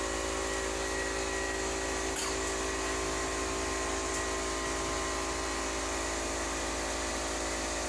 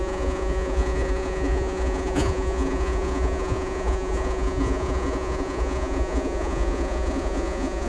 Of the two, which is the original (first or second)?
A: first